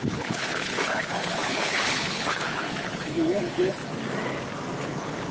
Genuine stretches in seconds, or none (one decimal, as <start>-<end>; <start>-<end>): 3.8-4.8